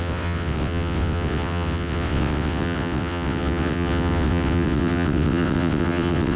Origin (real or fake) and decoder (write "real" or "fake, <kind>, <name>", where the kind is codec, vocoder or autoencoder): fake, vocoder, WaveNeXt